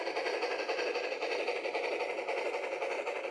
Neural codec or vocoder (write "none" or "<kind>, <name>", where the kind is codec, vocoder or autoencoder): none